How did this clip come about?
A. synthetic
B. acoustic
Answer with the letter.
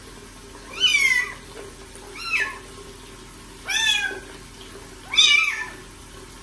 B